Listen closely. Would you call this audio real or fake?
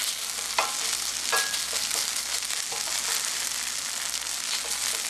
real